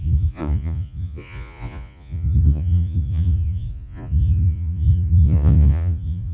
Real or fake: fake